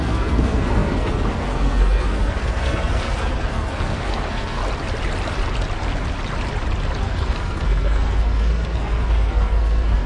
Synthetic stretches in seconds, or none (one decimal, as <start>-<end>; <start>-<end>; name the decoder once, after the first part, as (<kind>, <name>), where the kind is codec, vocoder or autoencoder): 0.0-4.6 (codec, SNAC); 7.0-10.1